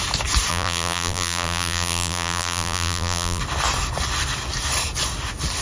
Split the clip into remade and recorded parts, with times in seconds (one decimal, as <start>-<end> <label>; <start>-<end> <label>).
0.0-0.5 recorded; 0.5-3.4 remade; 3.4-5.6 recorded